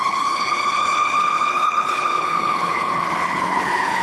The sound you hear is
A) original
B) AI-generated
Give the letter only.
B